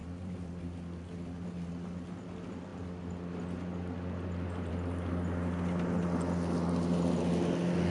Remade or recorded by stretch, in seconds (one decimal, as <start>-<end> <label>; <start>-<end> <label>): 0.0-0.6 remade; 0.6-7.9 recorded